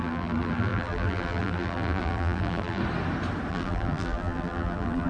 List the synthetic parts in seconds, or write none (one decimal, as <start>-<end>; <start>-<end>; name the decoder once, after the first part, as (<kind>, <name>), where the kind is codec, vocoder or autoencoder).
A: 0.0-2.8 (vocoder, BigVGAN v2); 3.5-5.1